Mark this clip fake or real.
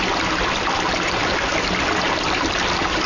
real